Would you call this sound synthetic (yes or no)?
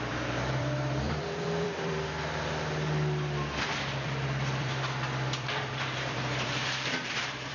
yes